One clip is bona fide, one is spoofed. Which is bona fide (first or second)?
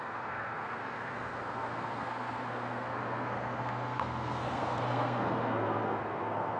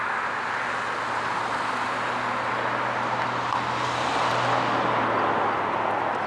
second